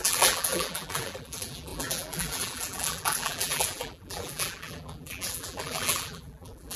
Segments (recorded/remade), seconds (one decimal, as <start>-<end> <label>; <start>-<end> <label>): 0.0-6.8 remade